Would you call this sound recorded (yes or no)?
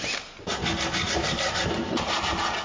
yes